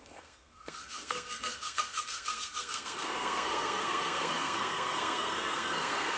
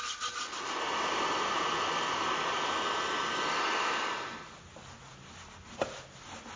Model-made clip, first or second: first